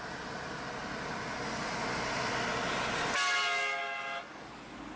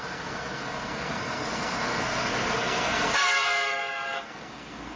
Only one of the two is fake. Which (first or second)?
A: second